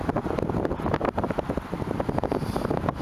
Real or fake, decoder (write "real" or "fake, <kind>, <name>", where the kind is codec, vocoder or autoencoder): real